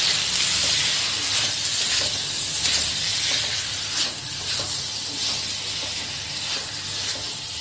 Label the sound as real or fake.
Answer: real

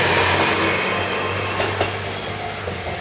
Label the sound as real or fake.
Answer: real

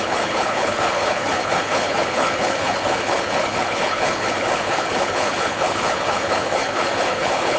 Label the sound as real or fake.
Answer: fake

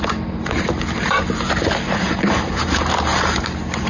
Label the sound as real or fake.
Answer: fake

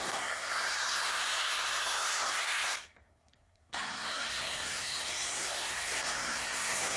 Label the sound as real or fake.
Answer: fake